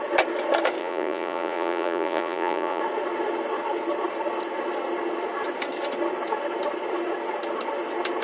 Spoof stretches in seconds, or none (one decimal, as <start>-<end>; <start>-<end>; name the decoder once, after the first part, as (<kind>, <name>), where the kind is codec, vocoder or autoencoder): 0.8-2.8 (vocoder, Vocos)